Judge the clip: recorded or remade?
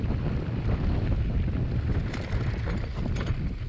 recorded